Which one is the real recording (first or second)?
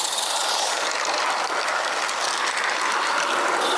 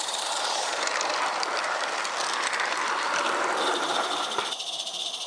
first